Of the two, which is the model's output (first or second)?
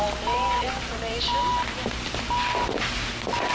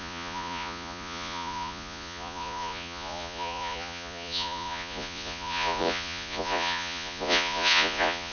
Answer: second